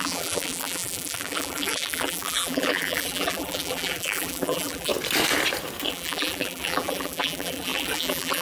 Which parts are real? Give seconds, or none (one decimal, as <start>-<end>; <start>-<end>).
4.9-5.9